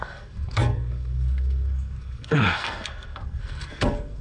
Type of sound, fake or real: fake